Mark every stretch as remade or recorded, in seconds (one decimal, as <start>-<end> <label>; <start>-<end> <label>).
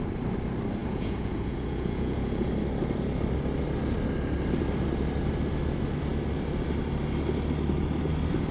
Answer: 0.0-0.8 recorded; 0.8-2.5 remade; 2.5-8.5 recorded